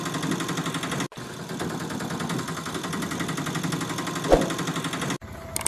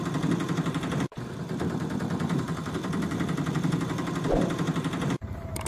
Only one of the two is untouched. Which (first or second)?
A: first